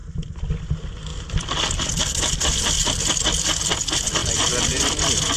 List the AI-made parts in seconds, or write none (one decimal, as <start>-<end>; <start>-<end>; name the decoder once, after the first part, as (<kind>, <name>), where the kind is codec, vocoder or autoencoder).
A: 1.1-3.2 (vocoder, BigVGAN v2); 4.2-5.0